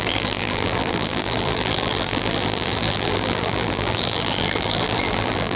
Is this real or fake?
fake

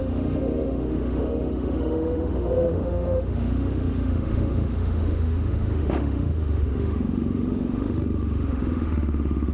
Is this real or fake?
fake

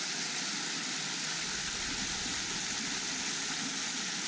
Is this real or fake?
real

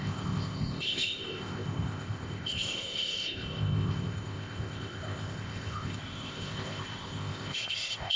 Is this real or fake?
fake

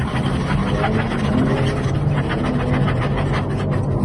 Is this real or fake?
real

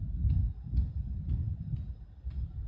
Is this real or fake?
real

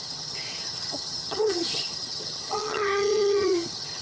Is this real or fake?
fake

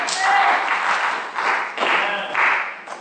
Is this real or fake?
real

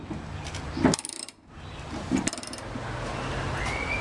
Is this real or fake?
real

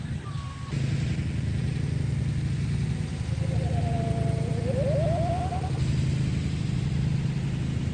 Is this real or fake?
real